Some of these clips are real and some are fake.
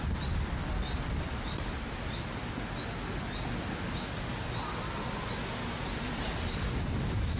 real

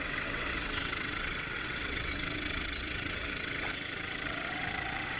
fake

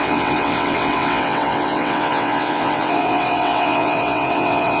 fake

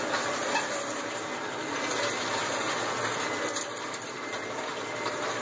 real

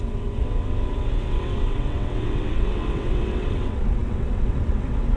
fake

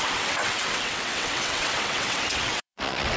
fake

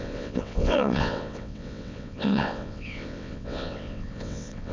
fake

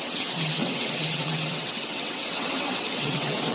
fake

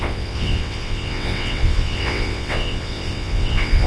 fake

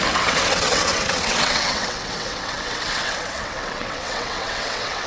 fake